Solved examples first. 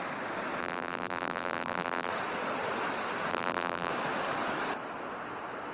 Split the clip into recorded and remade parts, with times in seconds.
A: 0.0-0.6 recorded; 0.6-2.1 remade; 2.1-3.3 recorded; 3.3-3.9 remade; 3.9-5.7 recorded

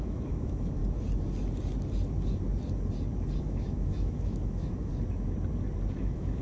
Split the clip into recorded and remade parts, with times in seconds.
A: 0.0-0.8 remade; 0.8-3.4 recorded; 3.4-4.9 remade; 4.9-6.0 recorded; 6.0-6.4 remade

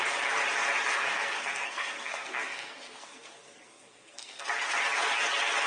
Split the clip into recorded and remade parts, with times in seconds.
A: 0.0-1.0 recorded; 1.0-4.4 remade; 4.4-5.7 recorded

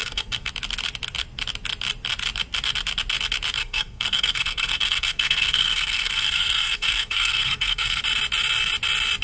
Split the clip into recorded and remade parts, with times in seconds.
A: 0.0-0.5 remade; 0.5-3.6 recorded; 3.6-8.0 remade; 8.0-9.2 recorded